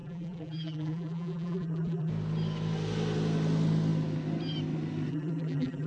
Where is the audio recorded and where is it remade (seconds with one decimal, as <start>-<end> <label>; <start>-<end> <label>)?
0.0-2.1 remade; 2.1-5.1 recorded; 5.1-5.9 remade